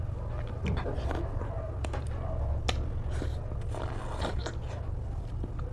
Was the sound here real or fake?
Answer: real